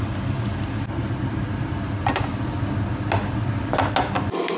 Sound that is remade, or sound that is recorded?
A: recorded